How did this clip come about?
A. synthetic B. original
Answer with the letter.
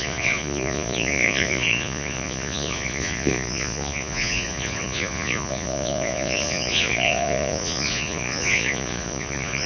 A